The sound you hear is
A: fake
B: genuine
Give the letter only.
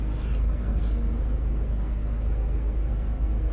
A